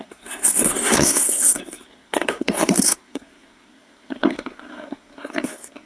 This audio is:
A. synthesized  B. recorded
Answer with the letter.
A